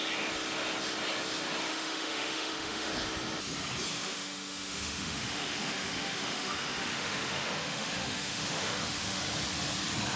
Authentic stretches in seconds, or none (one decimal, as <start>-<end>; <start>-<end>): 0.0-1.7; 2.9-3.9; 9.2-10.2